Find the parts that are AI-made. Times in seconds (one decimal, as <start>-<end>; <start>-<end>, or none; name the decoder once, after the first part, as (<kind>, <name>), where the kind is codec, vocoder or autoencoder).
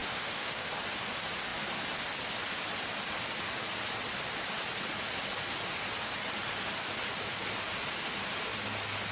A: 0.0-0.7 (autoencoder, DAC-VAE)